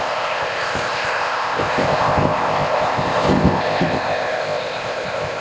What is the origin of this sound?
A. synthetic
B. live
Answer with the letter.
A